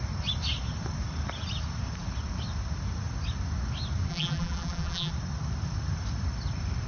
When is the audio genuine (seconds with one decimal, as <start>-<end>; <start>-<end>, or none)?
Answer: 0.0-4.1; 5.1-6.9